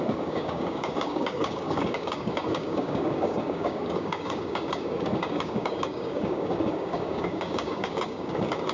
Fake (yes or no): yes